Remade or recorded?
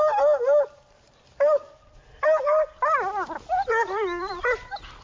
recorded